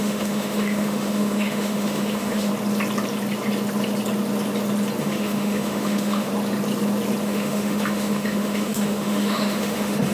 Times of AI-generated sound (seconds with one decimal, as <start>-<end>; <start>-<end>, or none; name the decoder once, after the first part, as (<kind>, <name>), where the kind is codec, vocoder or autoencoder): 0.0-2.5 (autoencoder, DAC-VAE); 5.0-6.3; 7.2-10.1